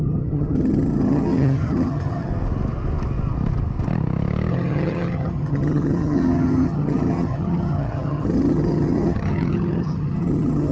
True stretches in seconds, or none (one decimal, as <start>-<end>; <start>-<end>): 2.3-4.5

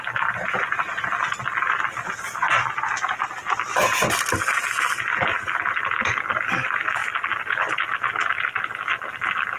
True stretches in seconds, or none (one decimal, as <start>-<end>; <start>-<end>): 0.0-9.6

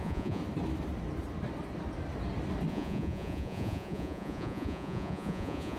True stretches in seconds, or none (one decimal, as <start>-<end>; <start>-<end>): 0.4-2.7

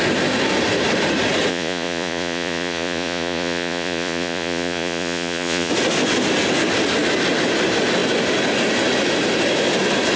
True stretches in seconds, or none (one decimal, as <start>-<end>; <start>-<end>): 0.0-1.5; 5.7-10.2

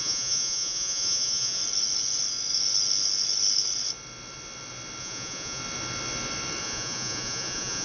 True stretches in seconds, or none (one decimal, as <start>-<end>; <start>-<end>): 1.6-5.0; 5.6-6.6

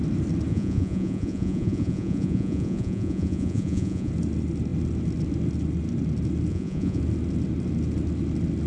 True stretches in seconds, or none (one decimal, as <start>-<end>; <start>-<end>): 0.0-0.5; 4.1-6.5; 7.0-8.7

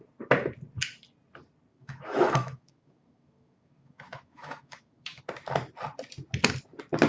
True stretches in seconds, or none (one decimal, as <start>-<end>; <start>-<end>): 0.0-1.7; 5.2-7.1

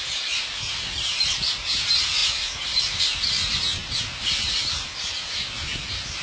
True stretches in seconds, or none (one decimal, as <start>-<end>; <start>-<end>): 0.0-6.2